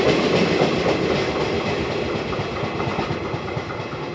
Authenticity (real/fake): real